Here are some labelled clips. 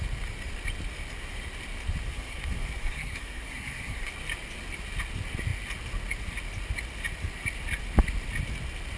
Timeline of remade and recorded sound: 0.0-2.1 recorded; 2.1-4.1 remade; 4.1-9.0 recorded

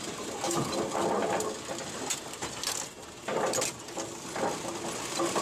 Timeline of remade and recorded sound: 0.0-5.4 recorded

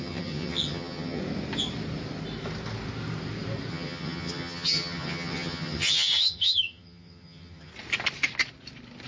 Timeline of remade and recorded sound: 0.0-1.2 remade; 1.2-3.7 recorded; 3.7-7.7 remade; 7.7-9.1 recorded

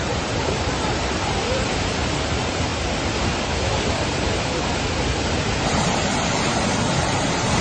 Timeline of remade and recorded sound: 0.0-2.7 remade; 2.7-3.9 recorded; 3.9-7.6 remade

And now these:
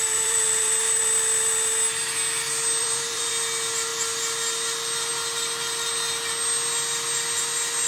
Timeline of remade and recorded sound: 0.0-1.0 remade; 1.0-2.8 recorded; 2.8-3.3 remade; 3.3-7.9 recorded